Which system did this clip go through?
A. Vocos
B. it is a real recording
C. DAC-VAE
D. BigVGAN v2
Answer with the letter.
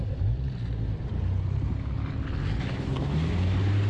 B